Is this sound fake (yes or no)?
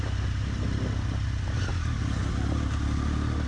no